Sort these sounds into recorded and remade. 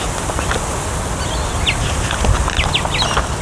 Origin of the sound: recorded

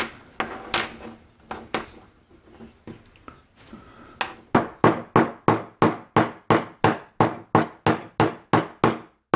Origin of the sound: recorded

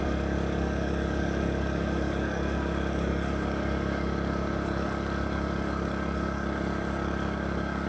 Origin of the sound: remade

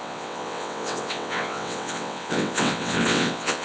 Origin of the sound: remade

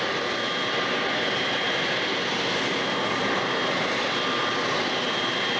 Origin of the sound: recorded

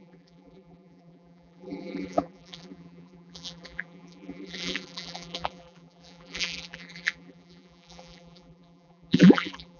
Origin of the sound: remade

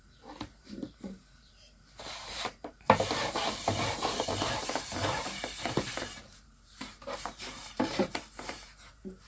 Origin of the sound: remade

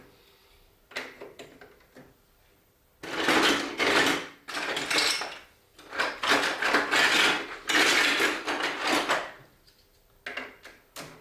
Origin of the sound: recorded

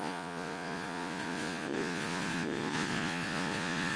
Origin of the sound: remade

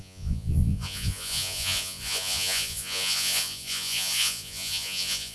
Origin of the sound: remade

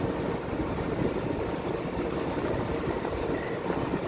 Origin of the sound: recorded